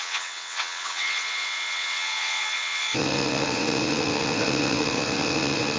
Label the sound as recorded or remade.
remade